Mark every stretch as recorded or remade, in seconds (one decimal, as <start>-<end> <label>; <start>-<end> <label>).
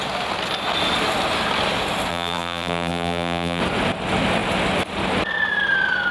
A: 0.0-2.1 recorded; 2.1-3.6 remade; 3.6-6.1 recorded